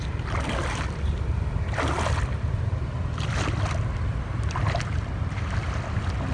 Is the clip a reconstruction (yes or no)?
no